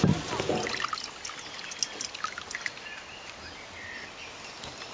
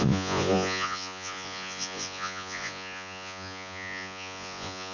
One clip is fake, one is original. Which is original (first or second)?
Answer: first